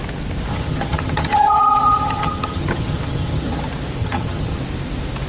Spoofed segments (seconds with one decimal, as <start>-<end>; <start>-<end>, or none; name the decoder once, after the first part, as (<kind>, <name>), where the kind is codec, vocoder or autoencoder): 0.5-3.6 (vocoder, HiFi-GAN); 4.0-4.6